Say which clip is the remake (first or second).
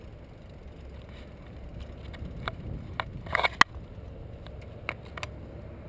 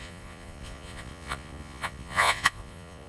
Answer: second